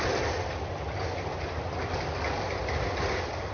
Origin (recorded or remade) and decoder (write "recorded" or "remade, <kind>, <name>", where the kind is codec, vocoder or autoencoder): recorded